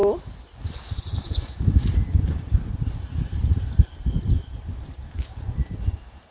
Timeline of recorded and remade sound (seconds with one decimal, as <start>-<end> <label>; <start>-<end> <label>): 0.0-0.9 recorded; 0.9-6.3 remade